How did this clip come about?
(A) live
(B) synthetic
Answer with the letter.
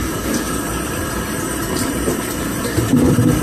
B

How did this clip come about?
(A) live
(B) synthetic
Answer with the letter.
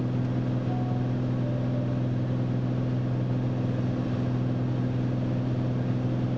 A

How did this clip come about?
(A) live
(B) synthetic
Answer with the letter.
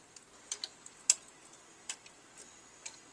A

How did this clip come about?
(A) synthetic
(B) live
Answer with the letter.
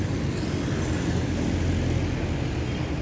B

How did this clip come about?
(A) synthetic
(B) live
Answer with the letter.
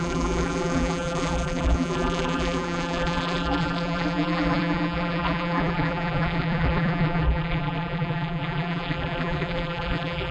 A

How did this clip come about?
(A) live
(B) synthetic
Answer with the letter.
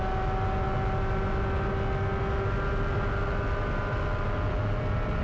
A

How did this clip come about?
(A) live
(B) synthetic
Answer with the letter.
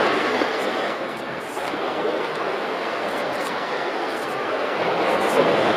B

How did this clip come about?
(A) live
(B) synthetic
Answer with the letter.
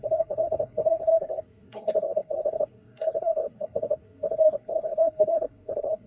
B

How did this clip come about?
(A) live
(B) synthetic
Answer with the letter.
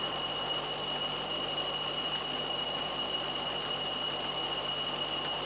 A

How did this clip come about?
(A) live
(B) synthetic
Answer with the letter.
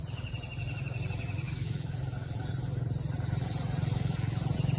B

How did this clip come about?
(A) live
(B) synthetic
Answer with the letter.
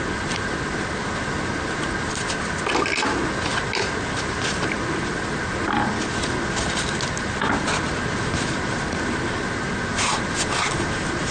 A